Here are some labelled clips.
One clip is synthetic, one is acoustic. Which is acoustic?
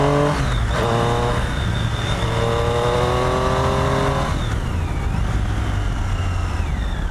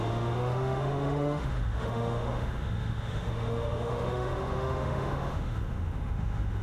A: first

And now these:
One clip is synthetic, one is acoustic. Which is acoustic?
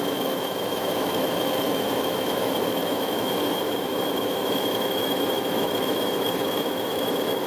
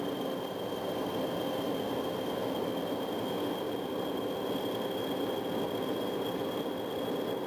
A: second